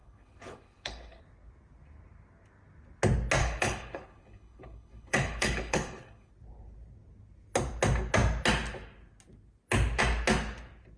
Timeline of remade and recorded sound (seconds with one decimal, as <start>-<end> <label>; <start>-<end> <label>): 0.0-1.2 remade; 1.2-3.4 recorded; 3.4-6.3 remade; 6.3-11.0 recorded